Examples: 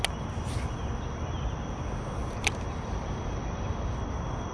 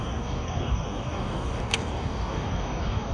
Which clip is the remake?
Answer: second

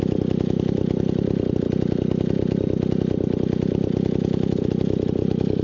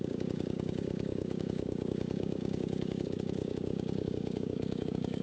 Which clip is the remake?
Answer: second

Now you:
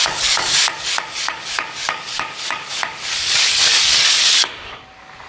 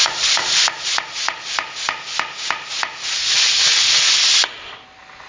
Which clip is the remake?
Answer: first